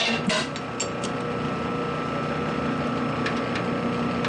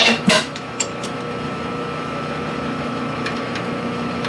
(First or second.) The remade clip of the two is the second